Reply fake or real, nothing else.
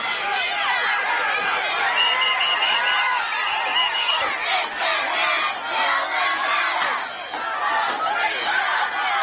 real